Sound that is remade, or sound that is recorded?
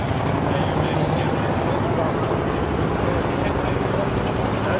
recorded